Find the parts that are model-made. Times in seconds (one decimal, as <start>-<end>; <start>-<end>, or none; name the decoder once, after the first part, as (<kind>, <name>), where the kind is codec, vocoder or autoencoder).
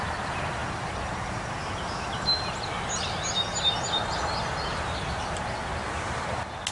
none